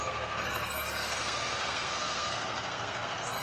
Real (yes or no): no